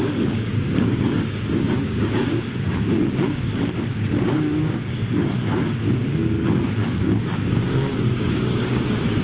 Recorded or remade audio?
remade